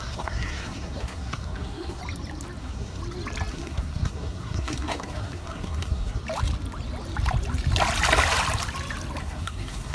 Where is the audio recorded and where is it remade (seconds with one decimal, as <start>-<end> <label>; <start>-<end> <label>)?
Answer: 0.0-2.0 remade; 2.0-2.6 recorded; 2.6-3.0 remade; 3.0-3.5 recorded; 3.5-6.2 remade; 6.2-9.2 recorded; 9.2-9.9 remade